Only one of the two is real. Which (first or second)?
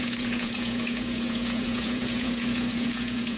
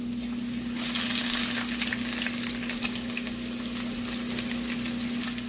second